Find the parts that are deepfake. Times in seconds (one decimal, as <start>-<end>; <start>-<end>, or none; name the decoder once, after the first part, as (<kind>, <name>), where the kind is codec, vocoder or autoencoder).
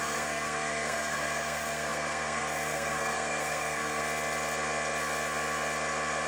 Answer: 0.0-4.0 (codec, SNAC)